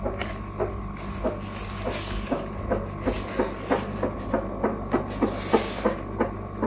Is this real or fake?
real